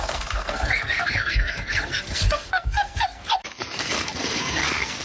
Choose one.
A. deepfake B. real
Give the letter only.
A